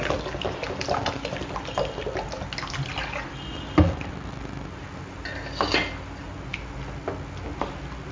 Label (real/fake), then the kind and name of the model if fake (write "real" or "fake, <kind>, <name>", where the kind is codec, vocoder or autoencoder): real